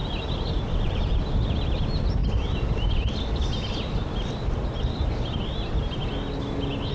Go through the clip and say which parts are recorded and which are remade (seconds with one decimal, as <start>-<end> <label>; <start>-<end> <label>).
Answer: 0.0-1.0 remade; 1.0-6.9 recorded